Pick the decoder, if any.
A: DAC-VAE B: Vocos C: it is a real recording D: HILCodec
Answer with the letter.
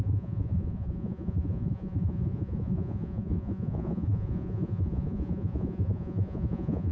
B